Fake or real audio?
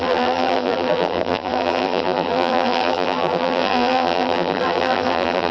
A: fake